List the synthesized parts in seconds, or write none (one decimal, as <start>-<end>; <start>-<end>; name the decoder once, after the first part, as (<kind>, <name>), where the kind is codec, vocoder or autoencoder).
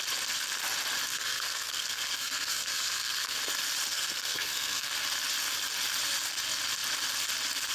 1.1-3.4 (codec, SNAC); 3.9-4.9